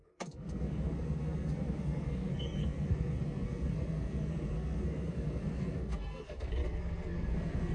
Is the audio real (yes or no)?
no